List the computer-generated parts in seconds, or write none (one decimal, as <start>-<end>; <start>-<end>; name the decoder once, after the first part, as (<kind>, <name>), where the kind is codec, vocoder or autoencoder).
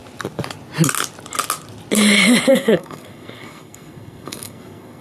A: 2.5-5.0 (codec, SNAC)